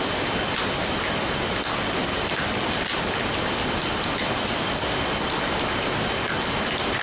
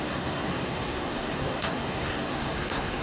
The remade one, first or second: second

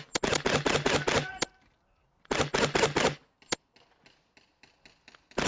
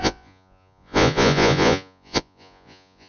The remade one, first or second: second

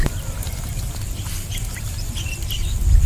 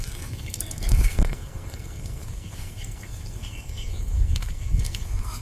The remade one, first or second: second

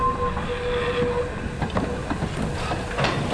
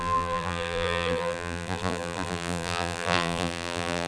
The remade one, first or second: second